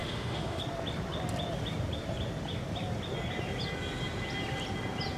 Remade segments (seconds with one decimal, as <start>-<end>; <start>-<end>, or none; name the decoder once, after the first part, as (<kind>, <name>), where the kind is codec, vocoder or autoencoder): 0.0-0.6 (autoencoder, DAC-VAE)

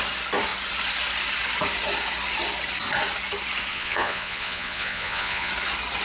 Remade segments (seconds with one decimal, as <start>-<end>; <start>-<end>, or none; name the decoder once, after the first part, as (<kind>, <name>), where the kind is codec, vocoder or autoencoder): 3.7-5.5 (vocoder, Vocos)

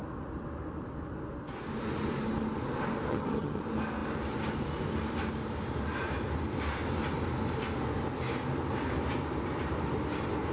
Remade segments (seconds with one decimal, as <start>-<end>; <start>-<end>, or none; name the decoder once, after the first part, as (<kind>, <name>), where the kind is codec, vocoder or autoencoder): 3.1-3.6 (vocoder, HiFi-GAN)

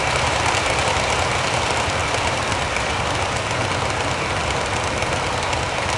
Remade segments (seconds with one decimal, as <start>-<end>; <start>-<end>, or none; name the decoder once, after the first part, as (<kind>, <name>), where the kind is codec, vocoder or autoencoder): none

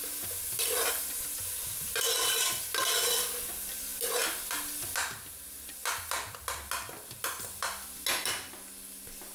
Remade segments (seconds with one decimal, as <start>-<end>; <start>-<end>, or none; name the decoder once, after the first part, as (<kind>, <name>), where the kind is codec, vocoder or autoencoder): none

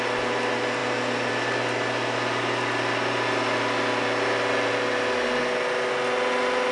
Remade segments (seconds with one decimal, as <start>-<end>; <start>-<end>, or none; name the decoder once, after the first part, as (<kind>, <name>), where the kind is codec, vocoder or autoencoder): none